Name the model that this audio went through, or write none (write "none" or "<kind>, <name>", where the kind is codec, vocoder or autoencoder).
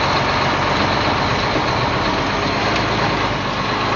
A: none